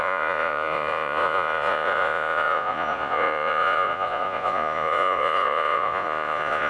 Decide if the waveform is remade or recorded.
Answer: remade